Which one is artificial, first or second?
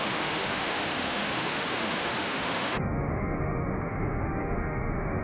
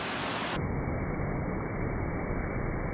first